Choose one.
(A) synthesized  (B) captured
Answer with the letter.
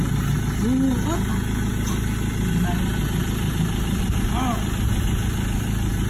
B